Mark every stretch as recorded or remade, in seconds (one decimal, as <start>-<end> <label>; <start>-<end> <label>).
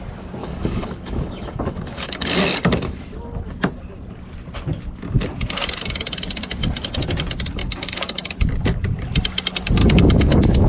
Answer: 0.0-0.4 recorded; 0.4-3.0 remade; 3.0-7.6 recorded; 7.6-8.3 remade; 8.3-9.8 recorded; 9.8-10.7 remade